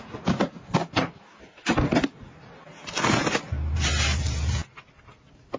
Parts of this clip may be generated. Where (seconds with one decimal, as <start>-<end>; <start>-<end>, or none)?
none